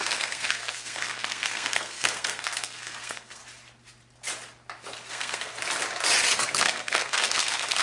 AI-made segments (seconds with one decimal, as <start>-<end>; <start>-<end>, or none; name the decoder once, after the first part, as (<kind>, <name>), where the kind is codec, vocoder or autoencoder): 0.0-3.4 (codec, SNAC); 5.1-5.5; 6.4-7.8